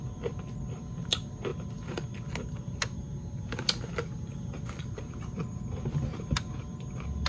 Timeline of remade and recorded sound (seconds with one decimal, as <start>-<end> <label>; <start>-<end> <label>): 0.0-7.3 recorded